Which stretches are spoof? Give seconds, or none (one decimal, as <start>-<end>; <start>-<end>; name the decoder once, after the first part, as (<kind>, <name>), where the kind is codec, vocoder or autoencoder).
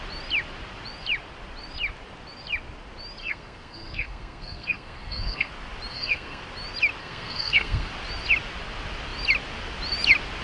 3.2-5.5 (codec, SNAC); 5.9-6.4; 7.0-7.9